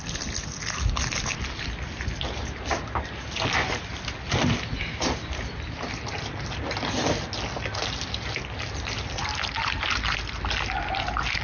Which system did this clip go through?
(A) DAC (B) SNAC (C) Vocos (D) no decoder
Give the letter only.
D